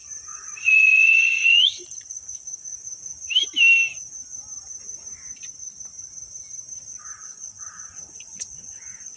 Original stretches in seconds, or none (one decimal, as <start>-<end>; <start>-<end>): 2.7-7.0